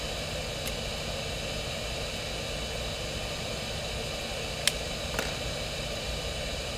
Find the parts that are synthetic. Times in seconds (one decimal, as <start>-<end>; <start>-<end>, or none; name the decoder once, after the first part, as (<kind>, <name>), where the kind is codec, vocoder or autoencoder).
none

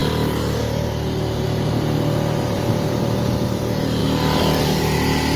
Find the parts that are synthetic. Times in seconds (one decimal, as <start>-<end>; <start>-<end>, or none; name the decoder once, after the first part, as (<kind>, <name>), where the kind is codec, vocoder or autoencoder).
0.0-4.0 (vocoder, BigVGAN v2); 4.6-5.4

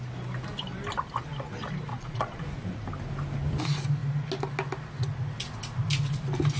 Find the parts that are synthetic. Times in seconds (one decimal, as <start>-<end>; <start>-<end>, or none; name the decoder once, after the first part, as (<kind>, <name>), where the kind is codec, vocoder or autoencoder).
1.9-2.4 (vocoder, Vocos)

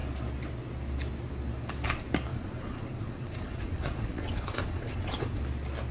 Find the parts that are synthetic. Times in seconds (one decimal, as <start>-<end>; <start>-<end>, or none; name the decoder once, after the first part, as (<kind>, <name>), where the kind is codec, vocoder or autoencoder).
2.3-5.4 (vocoder, Vocos)

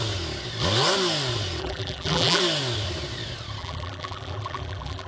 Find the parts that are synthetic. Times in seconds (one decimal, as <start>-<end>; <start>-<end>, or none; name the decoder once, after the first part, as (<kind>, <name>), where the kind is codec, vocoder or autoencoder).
1.6-2.4 (vocoder, BigVGAN v2); 3.6-5.1